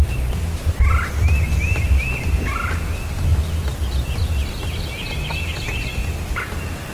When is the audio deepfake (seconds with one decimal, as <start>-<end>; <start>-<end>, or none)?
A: none